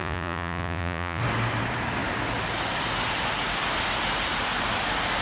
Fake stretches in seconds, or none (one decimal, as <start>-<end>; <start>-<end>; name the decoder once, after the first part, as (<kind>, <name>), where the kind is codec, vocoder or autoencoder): 0.0-1.2 (vocoder, Vocos)

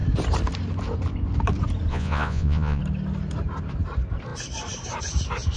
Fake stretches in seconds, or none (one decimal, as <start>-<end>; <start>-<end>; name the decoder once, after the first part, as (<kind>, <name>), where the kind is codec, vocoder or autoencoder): 1.9-2.8 (vocoder, Vocos)

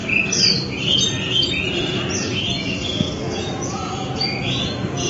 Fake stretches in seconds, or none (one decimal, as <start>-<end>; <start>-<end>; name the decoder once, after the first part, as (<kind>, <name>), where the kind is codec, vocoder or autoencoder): 2.3-5.1 (vocoder, Vocos)

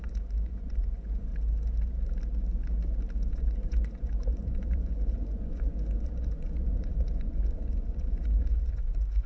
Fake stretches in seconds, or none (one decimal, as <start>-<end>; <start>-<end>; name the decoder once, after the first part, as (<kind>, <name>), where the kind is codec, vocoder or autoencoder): 0.0-1.3 (vocoder, Vocos); 3.3-9.3

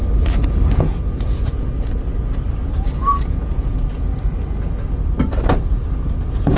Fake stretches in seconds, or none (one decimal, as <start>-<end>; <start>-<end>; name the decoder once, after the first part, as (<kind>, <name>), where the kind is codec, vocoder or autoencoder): 0.8-1.7 (vocoder, Vocos); 2.9-4.1; 6.0-6.6